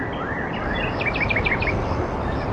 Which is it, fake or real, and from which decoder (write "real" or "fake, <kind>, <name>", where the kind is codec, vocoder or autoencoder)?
real